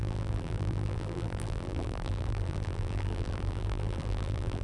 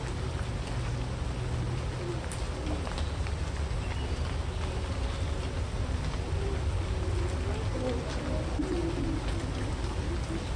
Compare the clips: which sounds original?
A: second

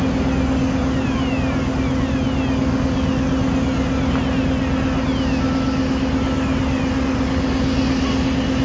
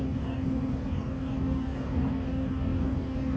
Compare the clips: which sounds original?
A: first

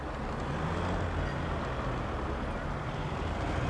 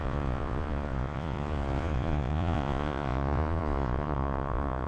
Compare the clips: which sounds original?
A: first